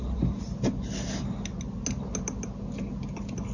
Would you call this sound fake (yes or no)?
no